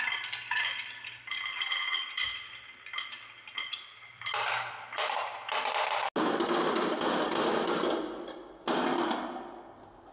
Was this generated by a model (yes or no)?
no